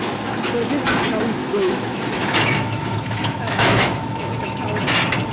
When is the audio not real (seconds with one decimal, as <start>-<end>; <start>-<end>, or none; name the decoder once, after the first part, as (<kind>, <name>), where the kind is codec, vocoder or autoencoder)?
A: 1.4-4.6 (autoencoder, DAC-VAE)